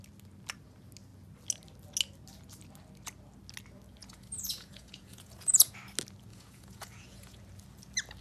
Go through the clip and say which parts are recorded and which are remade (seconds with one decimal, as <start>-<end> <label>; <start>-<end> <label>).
0.0-4.0 recorded; 4.0-5.7 remade; 5.7-6.3 recorded; 6.3-7.4 remade; 7.4-8.2 recorded